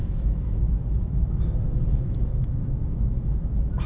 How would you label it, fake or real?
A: fake